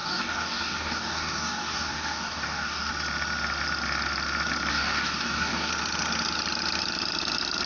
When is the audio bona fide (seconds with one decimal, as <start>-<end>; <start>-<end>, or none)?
2.9-4.7; 5.7-7.7